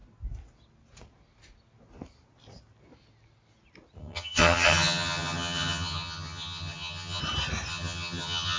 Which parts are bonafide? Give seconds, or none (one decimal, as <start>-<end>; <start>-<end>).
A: 0.0-4.0; 7.2-7.7